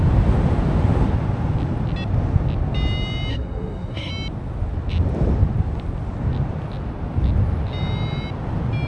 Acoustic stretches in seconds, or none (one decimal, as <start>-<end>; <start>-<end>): 0.0-3.3; 4.1-8.9